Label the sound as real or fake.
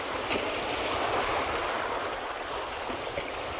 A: real